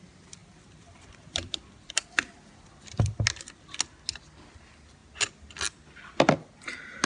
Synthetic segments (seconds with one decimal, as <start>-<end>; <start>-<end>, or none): 0.4-3.2